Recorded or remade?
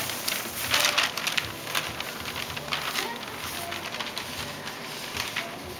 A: recorded